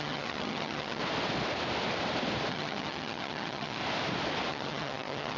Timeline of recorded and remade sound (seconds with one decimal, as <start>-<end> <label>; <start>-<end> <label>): 0.0-1.0 remade; 1.0-2.5 recorded; 2.5-3.8 remade; 3.8-4.5 recorded; 4.5-5.4 remade

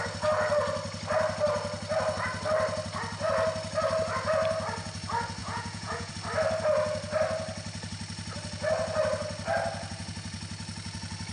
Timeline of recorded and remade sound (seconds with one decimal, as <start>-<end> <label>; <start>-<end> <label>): 0.0-5.4 recorded; 5.4-6.1 remade; 6.1-11.3 recorded

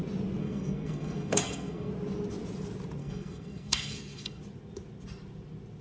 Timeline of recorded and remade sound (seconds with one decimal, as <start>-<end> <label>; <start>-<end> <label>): 0.0-0.4 recorded; 0.4-1.9 remade; 1.9-3.0 recorded; 3.0-4.4 remade; 4.4-5.8 recorded

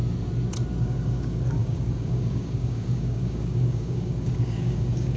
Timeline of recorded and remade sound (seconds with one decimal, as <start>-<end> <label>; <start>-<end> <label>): 0.0-0.8 recorded; 0.8-5.2 remade

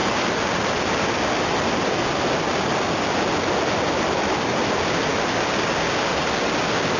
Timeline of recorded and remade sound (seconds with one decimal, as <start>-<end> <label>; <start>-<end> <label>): 0.0-7.0 recorded